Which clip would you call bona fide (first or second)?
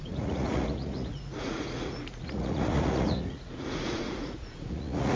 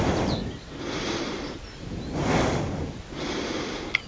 second